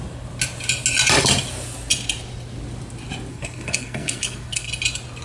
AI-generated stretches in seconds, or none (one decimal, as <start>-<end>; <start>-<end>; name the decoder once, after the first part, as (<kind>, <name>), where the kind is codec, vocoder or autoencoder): 3.3-4.7 (codec, SNAC)